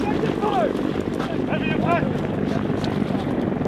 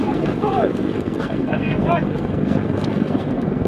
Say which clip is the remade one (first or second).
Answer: second